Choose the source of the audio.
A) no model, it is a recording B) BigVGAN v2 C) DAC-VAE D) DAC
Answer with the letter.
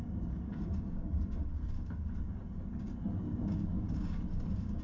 D